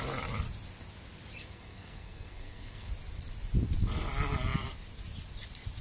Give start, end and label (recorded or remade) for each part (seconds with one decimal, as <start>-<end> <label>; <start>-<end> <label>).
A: 0.0-1.4 recorded; 1.4-2.9 remade; 2.9-5.8 recorded